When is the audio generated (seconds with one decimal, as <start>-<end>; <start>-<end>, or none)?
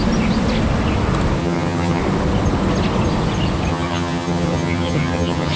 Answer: 1.4-2.0; 3.7-5.6